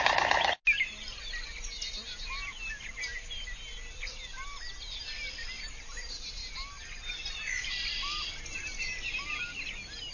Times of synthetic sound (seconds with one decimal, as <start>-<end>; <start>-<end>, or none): none